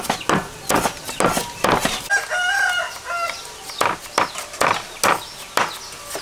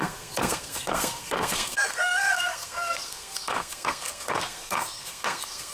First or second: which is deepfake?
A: second